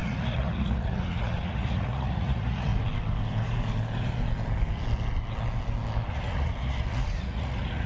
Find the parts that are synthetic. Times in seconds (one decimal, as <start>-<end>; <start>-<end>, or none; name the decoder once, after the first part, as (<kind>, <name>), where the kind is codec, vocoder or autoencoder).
0.0-2.7 (vocoder, Vocos); 6.1-7.9